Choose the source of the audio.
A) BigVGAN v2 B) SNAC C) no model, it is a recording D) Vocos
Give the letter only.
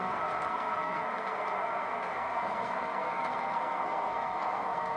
B